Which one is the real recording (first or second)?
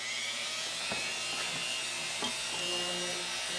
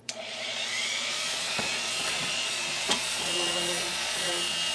first